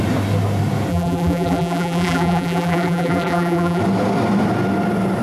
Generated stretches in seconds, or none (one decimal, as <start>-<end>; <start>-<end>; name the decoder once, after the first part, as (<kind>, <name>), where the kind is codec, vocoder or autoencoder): 0.9-3.8 (vocoder, BigVGAN v2)